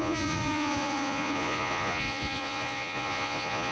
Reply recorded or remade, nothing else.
remade